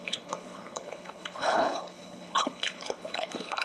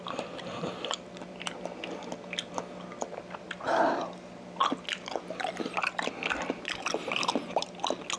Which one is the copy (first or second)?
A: first